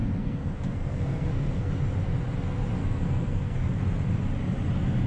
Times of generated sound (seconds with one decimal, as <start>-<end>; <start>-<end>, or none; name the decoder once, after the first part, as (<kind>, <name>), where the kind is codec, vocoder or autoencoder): 0.0-1.7 (codec, SNAC); 2.8-3.8